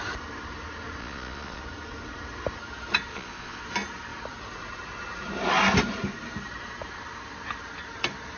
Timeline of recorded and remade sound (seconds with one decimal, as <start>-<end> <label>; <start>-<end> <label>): 0.0-1.0 recorded; 1.0-1.6 remade; 1.6-3.1 recorded; 3.1-3.6 remade; 3.6-8.4 recorded